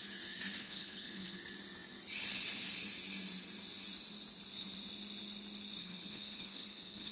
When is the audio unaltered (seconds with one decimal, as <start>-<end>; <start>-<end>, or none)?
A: 0.0-0.6; 1.4-5.8